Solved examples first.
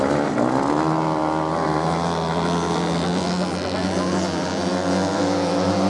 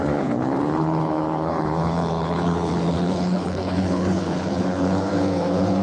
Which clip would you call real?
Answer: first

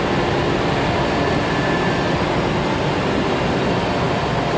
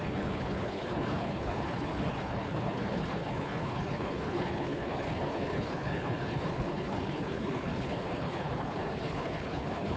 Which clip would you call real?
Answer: first